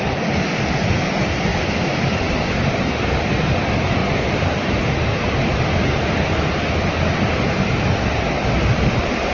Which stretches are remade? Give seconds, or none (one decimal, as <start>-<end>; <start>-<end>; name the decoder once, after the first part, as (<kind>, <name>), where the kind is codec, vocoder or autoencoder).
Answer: none